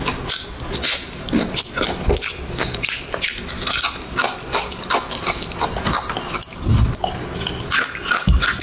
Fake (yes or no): no